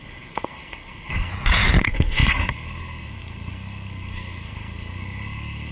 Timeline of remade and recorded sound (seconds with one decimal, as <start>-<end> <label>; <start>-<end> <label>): 0.0-1.3 remade; 1.3-1.8 recorded; 1.8-5.7 remade